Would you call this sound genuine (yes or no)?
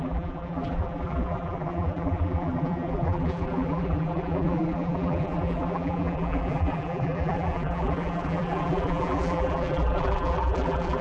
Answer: no